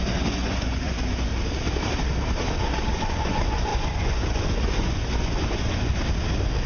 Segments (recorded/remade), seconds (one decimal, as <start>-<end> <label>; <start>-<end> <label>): 0.0-1.3 remade; 1.3-2.6 recorded; 2.6-5.9 remade; 5.9-6.7 recorded